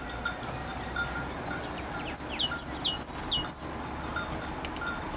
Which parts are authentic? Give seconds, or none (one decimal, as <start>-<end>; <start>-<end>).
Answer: 0.0-0.7; 2.2-5.2